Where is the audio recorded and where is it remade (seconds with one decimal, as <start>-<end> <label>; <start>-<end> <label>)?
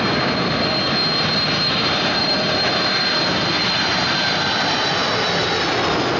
0.0-6.2 recorded